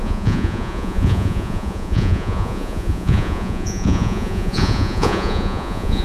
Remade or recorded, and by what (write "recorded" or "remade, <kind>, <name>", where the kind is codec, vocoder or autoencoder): remade, vocoder, Vocos